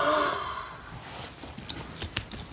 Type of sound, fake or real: real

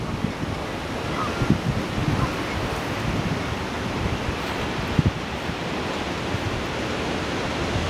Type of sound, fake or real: real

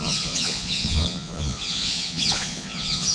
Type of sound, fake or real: fake